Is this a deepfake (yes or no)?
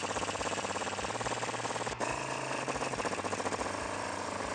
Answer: no